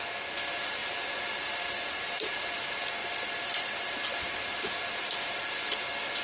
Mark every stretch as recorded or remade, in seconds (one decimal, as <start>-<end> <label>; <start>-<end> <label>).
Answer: 0.0-0.8 recorded; 0.8-2.6 remade; 2.6-3.0 recorded; 3.0-3.9 remade; 3.9-6.2 recorded